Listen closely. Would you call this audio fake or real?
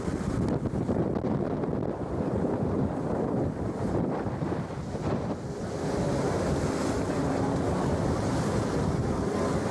real